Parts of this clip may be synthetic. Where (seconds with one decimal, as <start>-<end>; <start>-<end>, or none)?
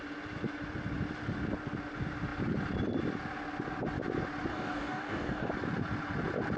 4.5-5.5